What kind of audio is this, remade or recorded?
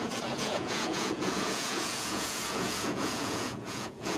remade